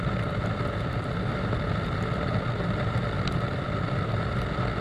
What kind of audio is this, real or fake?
real